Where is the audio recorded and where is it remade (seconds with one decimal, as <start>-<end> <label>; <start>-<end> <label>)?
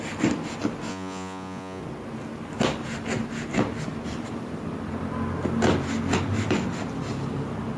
0.0-0.9 recorded; 0.9-1.8 remade; 1.8-7.8 recorded